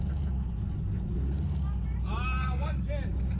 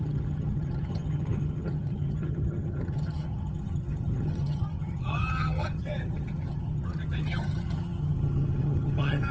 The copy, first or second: second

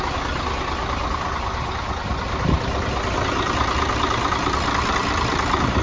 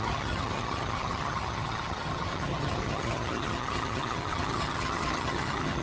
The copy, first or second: second